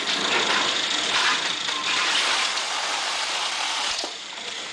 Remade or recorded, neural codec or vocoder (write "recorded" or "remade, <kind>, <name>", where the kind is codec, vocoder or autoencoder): remade, vocoder, BigVGAN v2